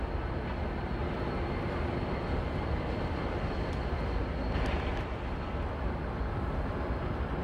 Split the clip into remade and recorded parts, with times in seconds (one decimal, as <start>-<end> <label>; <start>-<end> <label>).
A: 0.0-1.0 recorded; 1.0-3.8 remade; 3.8-4.9 recorded; 4.9-5.5 remade; 5.5-7.4 recorded